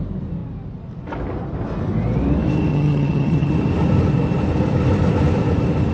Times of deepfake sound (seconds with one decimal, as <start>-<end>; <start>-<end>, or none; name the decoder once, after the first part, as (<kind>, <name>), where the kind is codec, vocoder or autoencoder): 2.7-3.5 (vocoder, HiFi-GAN)